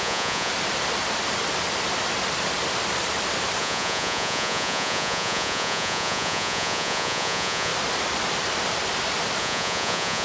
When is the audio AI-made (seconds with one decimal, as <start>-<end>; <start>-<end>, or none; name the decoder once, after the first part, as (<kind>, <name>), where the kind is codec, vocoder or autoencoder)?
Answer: 0.0-0.5 (vocoder, Vocos); 3.6-7.7; 9.4-10.2